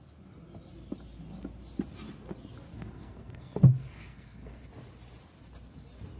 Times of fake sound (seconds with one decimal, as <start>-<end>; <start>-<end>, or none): 2.7-4.6